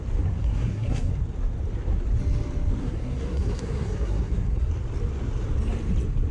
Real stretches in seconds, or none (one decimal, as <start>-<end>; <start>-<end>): 0.0-0.4; 1.1-2.8; 4.7-6.3